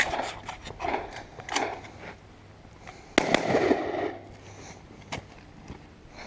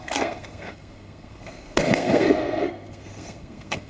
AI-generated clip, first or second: second